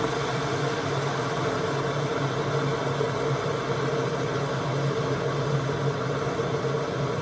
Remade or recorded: recorded